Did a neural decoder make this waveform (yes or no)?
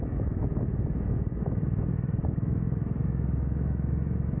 yes